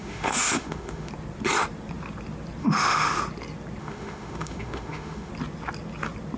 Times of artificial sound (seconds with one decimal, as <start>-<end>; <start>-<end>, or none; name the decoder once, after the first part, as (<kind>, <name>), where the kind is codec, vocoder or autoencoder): 0.0-1.1 (autoencoder, DAC-VAE); 2.6-3.2; 3.8-5.3

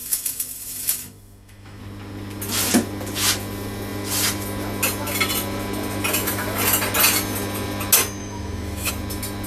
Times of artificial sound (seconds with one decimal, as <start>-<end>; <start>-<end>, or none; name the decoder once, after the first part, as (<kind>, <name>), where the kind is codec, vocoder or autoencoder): 0.0-1.8 (autoencoder, DAC-VAE); 8.2-8.9

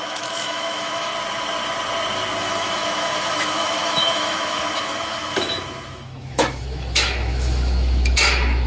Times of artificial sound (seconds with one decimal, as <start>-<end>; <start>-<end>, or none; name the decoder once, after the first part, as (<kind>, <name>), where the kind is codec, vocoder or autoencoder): 0.0-1.1 (autoencoder, DAC-VAE); 2.4-8.7

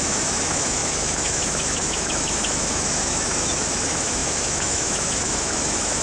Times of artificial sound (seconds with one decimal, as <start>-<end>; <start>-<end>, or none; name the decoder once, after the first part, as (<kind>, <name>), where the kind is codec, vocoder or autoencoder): 0.0-6.0 (autoencoder, DAC-VAE)

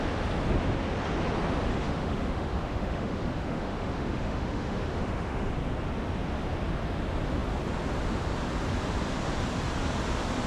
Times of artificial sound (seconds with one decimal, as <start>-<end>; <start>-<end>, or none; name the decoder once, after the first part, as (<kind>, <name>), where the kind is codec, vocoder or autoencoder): 1.7-5.5 (autoencoder, DAC-VAE)

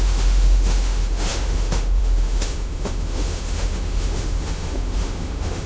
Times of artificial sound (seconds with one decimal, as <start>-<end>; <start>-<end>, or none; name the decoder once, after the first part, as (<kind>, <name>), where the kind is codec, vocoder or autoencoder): 0.0-5.7 (autoencoder, DAC-VAE)

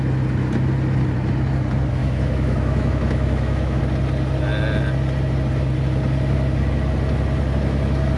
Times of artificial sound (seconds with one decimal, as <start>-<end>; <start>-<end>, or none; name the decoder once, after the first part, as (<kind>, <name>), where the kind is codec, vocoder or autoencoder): 2.0-3.8 (autoencoder, DAC-VAE)